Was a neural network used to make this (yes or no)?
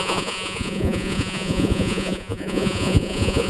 yes